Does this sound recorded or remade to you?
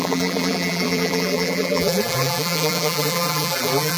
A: remade